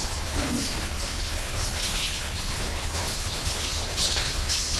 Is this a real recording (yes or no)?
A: no